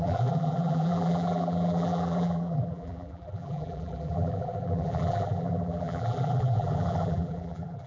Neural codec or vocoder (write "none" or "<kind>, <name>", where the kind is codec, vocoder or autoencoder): vocoder, BigVGAN v2